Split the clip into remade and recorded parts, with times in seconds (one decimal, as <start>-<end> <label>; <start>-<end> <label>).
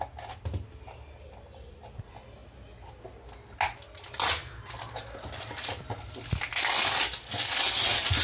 0.0-8.2 recorded